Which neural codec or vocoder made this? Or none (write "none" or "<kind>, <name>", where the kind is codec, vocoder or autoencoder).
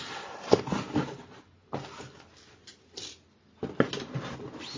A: none